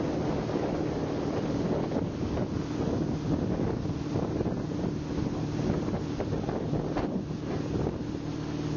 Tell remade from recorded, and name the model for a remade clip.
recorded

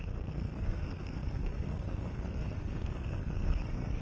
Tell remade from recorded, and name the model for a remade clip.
remade, codec, SNAC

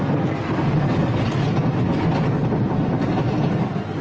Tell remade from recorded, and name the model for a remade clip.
recorded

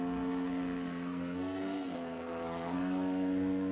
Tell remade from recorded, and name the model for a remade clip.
remade, codec, SNAC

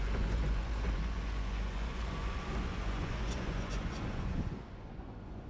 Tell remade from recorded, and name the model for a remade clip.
remade, vocoder, Vocos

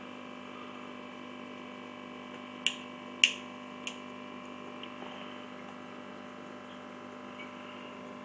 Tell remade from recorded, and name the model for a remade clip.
recorded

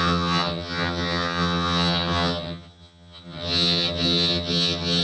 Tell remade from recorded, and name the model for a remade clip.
remade, vocoder, HiFi-GAN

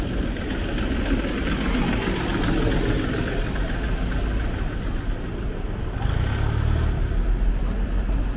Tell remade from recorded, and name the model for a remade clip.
recorded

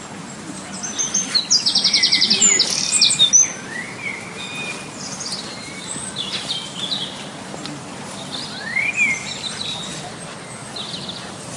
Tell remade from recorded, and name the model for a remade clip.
recorded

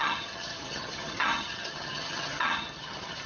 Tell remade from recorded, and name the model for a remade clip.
remade, vocoder, HiFi-GAN